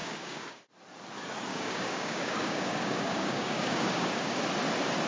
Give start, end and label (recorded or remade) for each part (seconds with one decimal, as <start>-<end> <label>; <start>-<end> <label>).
0.0-0.6 remade; 0.6-1.5 recorded; 1.5-4.4 remade; 4.4-5.1 recorded

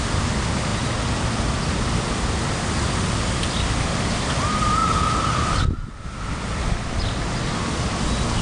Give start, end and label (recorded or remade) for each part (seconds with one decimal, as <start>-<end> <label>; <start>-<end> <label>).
0.0-8.4 recorded

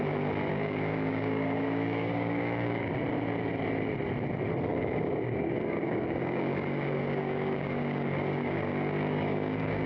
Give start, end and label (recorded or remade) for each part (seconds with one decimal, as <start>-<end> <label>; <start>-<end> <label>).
0.0-0.5 recorded; 0.5-2.9 remade; 2.9-4.7 recorded; 4.7-9.9 remade

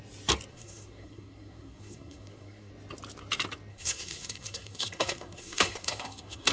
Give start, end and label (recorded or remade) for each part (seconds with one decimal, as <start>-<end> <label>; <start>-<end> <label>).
0.0-0.5 recorded; 0.5-2.7 remade; 2.7-3.7 recorded; 3.7-6.5 remade

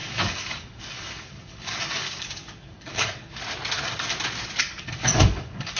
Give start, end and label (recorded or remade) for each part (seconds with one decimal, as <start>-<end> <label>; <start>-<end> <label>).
0.0-3.4 remade; 3.4-4.6 recorded; 4.6-5.8 remade

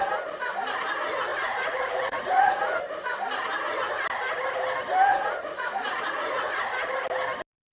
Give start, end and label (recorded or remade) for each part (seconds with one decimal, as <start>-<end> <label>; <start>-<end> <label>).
0.0-1.3 recorded; 1.3-2.8 remade; 2.8-5.1 recorded; 5.1-6.9 remade; 6.9-7.7 recorded

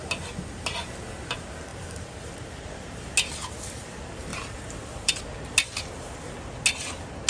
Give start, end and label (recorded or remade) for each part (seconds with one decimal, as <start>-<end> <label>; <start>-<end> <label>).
0.0-1.7 recorded; 1.7-3.1 remade; 3.1-4.3 recorded; 4.3-5.1 remade; 5.1-7.3 recorded